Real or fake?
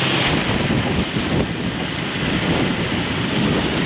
real